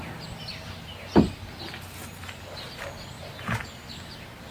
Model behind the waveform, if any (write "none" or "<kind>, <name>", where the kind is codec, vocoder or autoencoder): none